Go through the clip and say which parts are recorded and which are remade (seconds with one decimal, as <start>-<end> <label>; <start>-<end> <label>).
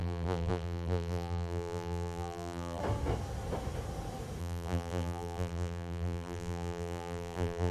0.0-2.8 remade; 2.8-4.4 recorded; 4.4-7.7 remade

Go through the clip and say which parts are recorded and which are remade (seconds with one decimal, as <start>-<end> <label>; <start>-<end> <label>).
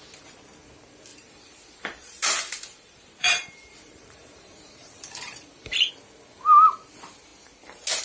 0.0-1.1 recorded; 1.1-5.9 remade; 5.9-8.0 recorded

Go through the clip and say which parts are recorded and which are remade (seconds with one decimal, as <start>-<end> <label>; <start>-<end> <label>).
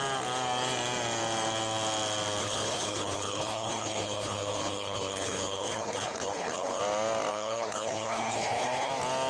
0.0-2.4 recorded; 2.4-6.8 remade; 6.8-7.3 recorded; 7.3-8.9 remade; 8.9-9.3 recorded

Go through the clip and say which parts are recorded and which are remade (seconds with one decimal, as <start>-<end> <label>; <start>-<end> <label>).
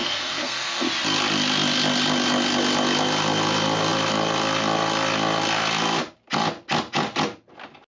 0.0-0.9 remade; 0.9-7.9 recorded